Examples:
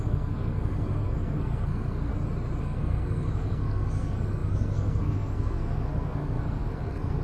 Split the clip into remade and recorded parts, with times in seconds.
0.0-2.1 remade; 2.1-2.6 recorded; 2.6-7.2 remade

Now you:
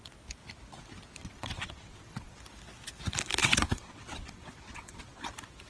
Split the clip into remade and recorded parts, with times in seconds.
0.0-1.2 recorded; 1.2-2.4 remade; 2.4-3.4 recorded; 3.4-5.2 remade; 5.2-5.7 recorded

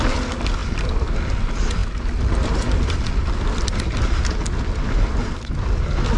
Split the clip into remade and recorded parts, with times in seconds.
0.0-6.2 recorded

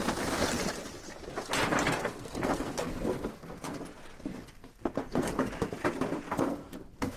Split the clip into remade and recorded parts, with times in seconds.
0.0-1.9 recorded; 1.9-3.8 remade; 3.8-4.3 recorded; 4.3-5.5 remade; 5.5-6.3 recorded; 6.3-7.2 remade